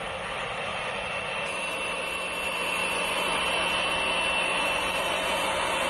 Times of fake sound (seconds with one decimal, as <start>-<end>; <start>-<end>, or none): 0.7-1.6; 2.8-3.4; 4.5-5.9